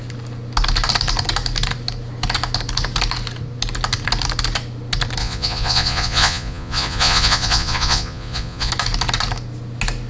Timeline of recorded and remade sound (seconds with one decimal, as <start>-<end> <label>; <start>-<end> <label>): 0.0-5.2 recorded; 5.2-8.7 remade; 8.7-10.1 recorded